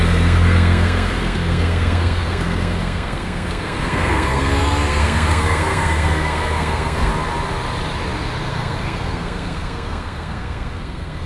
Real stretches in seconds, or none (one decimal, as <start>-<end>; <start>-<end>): 7.1-8.5